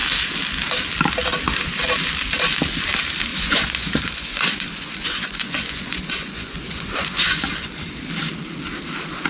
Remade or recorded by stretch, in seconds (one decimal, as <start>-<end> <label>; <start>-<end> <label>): 0.0-3.3 recorded; 3.3-7.5 remade; 7.5-9.3 recorded